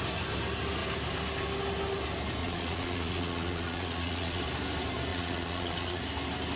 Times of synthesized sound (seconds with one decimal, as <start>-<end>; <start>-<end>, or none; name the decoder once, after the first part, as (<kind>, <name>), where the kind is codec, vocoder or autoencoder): 2.4-4.4 (vocoder, Vocos); 5.1-6.0